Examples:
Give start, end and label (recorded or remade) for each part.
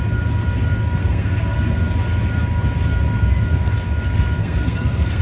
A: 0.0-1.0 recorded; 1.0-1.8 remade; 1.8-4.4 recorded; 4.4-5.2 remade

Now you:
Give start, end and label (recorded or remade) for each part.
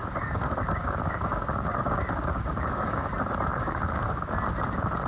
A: 0.0-3.1 remade; 3.1-3.5 recorded; 3.5-4.2 remade; 4.2-5.1 recorded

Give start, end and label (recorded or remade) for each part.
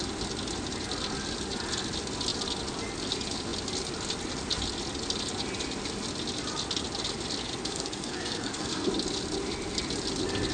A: 0.0-7.6 recorded; 7.6-8.9 remade; 8.9-10.5 recorded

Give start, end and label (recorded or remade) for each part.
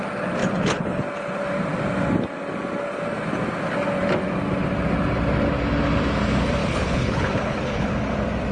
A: 0.0-0.4 recorded; 0.4-1.0 remade; 1.0-6.6 recorded; 6.6-7.9 remade; 7.9-8.5 recorded